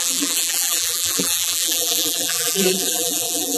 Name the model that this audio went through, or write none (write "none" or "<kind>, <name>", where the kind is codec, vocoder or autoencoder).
vocoder, BigVGAN v2